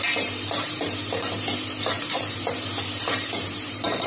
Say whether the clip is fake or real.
fake